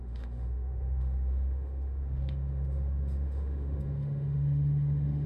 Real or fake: fake